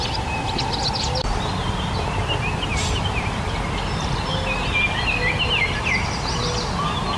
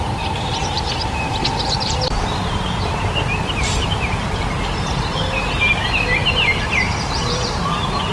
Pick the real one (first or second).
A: first